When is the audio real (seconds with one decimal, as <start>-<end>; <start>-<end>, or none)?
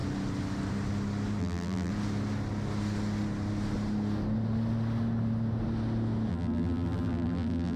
0.0-1.4; 1.9-6.3